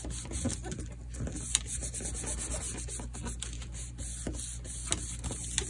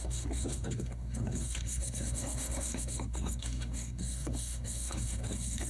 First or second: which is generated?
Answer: second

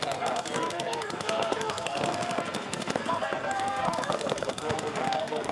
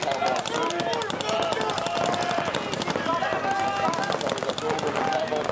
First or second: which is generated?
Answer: first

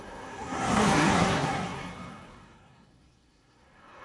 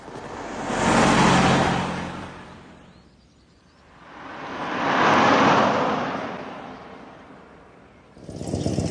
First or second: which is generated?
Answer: first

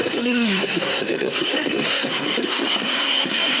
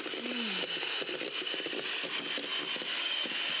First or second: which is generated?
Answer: first